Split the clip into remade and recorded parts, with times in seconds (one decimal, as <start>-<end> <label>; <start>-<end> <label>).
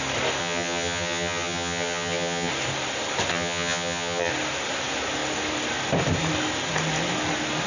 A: 0.0-0.4 recorded; 0.4-2.5 remade; 2.5-3.3 recorded; 3.3-4.3 remade; 4.3-7.7 recorded